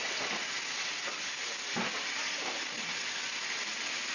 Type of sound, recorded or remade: recorded